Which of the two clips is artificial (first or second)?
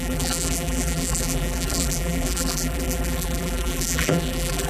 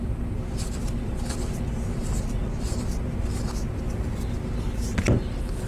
first